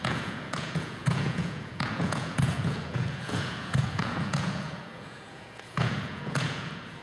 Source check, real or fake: fake